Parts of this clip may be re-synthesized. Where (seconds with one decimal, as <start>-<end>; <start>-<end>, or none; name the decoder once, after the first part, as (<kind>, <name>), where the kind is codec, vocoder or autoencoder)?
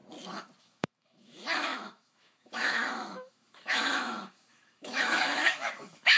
0.6-6.2 (autoencoder, DAC-VAE)